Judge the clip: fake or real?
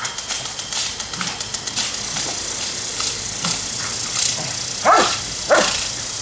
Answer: real